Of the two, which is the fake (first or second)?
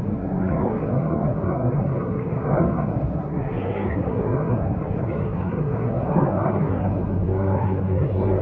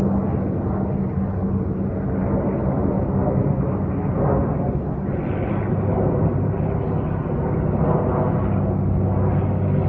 first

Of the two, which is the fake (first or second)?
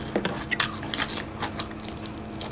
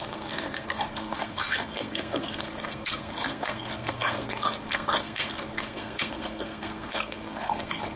second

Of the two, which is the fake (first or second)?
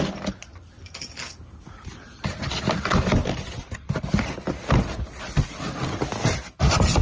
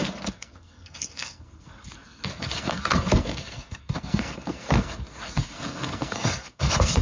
second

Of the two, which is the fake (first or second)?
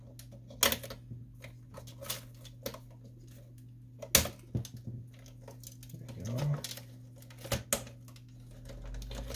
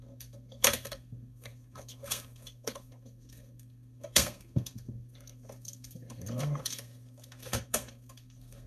second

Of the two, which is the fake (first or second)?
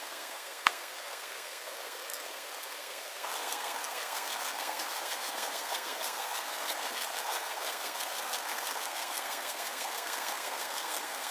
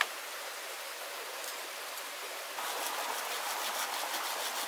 first